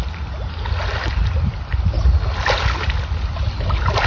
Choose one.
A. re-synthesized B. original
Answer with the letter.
B